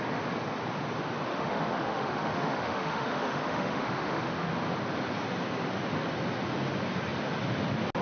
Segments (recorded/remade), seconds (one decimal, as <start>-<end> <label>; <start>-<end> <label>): 0.0-1.3 recorded; 1.3-4.5 remade; 4.5-8.0 recorded